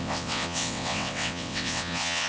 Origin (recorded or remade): remade